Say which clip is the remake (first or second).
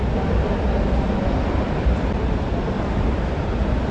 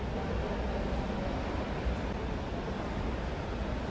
first